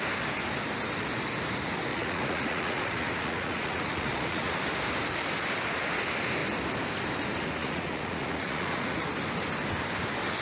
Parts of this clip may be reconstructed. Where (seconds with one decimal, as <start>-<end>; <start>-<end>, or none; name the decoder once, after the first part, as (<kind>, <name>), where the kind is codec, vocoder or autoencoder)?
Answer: 1.9-4.5 (vocoder, Vocos); 7.6-9.1

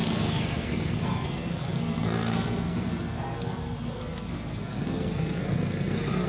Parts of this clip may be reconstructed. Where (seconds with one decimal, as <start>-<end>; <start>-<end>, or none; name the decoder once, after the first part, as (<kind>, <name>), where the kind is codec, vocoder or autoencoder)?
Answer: 0.0-6.3 (codec, SNAC)

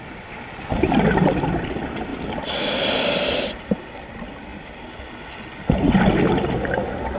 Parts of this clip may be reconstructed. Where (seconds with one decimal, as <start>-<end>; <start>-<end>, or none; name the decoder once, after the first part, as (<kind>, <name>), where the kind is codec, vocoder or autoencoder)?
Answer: none

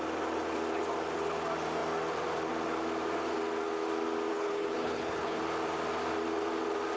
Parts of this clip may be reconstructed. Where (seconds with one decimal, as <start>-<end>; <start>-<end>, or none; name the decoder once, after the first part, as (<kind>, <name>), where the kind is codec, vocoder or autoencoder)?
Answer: 4.3-5.4 (codec, HILCodec)

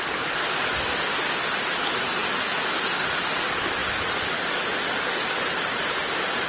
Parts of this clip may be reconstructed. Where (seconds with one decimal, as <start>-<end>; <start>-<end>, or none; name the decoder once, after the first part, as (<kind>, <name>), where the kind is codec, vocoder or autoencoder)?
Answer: none